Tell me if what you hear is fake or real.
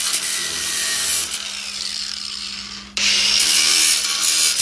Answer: real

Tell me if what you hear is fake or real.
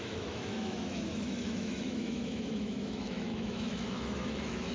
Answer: fake